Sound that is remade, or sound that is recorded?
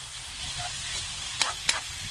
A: recorded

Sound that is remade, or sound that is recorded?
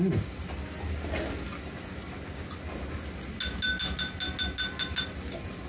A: recorded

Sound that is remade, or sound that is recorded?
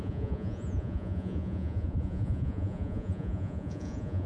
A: remade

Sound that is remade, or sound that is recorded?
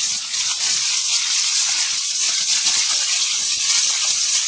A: remade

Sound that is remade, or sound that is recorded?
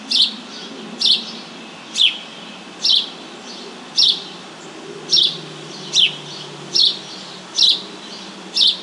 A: recorded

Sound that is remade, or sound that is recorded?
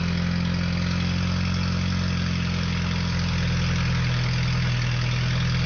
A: recorded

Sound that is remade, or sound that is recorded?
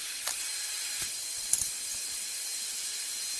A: recorded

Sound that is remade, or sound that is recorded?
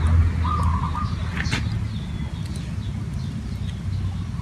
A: recorded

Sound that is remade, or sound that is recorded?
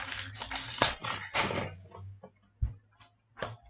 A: recorded